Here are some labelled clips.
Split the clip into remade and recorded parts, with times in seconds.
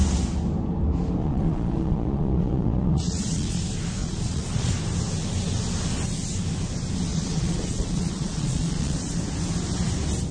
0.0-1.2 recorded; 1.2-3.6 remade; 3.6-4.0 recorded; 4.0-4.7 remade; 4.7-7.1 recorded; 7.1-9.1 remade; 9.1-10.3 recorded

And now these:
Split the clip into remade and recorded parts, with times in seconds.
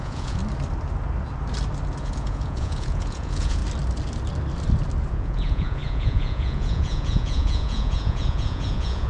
0.0-0.4 remade; 0.4-2.0 recorded; 2.0-3.6 remade; 3.6-5.1 recorded; 5.1-9.1 remade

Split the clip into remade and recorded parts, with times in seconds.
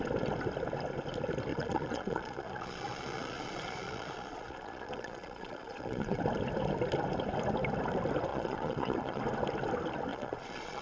0.0-1.5 recorded; 1.5-6.2 remade; 6.2-8.3 recorded; 8.3-9.2 remade; 9.2-10.1 recorded; 10.1-10.8 remade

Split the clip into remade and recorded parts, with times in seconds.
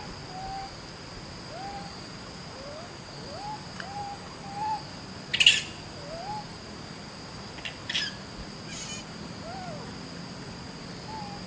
0.0-11.5 recorded